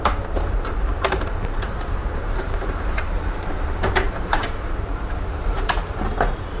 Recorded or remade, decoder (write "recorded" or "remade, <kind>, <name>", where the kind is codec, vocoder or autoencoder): remade, vocoder, BigVGAN v2